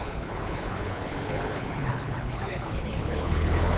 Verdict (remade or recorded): remade